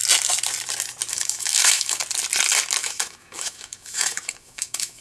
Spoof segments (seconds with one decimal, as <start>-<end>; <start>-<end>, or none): 1.1-2.0; 2.8-5.0